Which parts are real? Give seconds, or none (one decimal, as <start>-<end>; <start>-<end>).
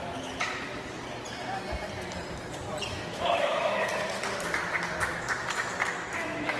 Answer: 0.7-2.9; 3.9-5.0